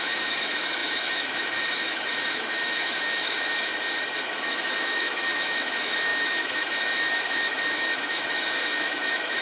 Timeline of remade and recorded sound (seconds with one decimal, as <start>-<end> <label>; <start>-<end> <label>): 0.0-3.7 remade; 3.7-4.2 recorded; 4.2-9.4 remade